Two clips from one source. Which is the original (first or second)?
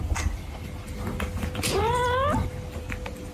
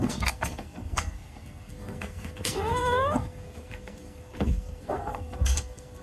first